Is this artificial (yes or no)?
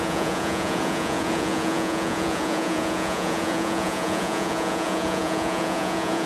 yes